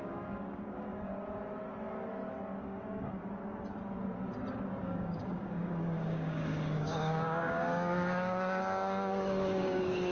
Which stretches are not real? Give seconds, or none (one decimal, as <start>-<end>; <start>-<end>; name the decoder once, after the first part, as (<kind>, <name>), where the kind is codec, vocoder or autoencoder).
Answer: 0.0-1.1 (codec, DAC); 2.6-3.2; 4.8-10.1